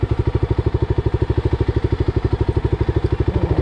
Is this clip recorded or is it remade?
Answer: recorded